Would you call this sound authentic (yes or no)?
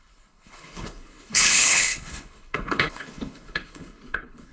no